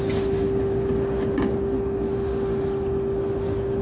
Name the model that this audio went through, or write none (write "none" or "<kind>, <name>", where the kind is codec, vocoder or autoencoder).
none